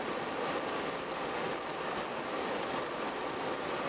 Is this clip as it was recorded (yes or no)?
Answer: yes